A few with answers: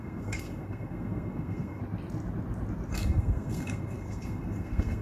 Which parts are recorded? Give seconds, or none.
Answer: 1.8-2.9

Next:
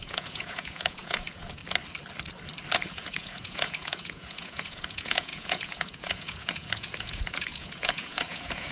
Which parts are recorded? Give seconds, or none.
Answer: 1.6-2.9

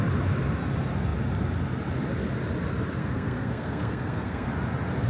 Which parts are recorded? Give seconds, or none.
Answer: 0.0-3.0; 4.5-5.1